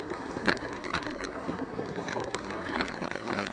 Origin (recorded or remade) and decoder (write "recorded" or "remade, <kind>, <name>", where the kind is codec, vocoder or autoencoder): remade, codec, SNAC